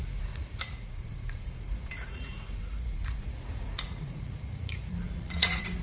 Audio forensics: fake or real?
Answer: fake